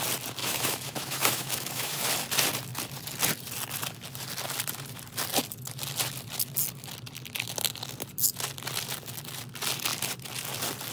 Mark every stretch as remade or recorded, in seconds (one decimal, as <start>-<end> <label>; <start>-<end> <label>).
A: 0.0-0.4 recorded; 0.4-2.1 remade; 2.1-10.9 recorded